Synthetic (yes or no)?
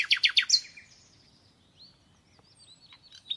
no